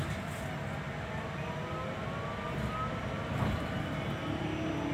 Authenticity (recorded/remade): recorded